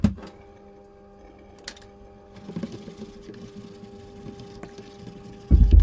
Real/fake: real